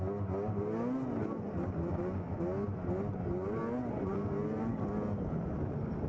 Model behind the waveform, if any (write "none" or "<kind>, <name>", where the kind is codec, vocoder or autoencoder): none